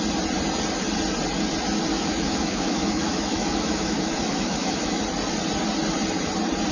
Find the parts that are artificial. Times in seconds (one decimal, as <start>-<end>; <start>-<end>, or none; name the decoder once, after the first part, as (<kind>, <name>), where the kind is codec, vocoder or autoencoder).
1.9-5.0 (autoencoder, DAC-VAE)